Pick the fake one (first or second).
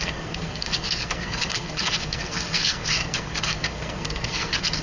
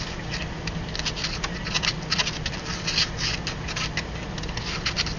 first